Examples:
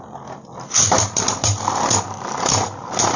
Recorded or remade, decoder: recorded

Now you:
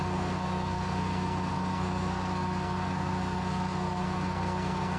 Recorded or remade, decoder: remade, codec, SNAC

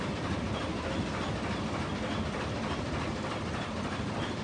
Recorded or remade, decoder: recorded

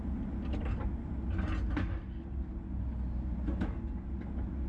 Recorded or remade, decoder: recorded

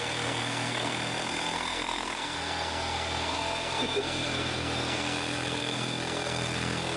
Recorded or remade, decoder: remade, codec, SNAC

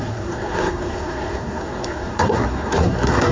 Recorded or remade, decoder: remade, codec, SNAC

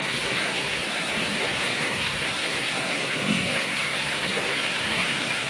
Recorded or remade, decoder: remade, codec, SNAC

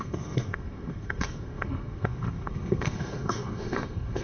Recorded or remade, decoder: remade, codec, SNAC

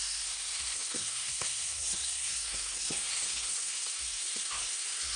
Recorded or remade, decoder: remade, codec, SNAC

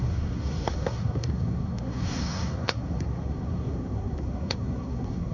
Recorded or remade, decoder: remade, codec, SNAC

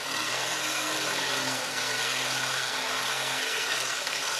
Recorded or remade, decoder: remade, codec, SNAC